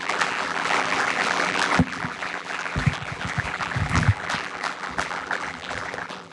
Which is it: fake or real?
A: fake